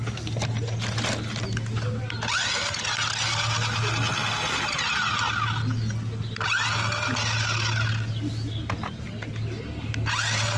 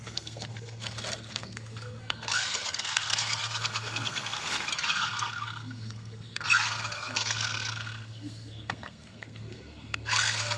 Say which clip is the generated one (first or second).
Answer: second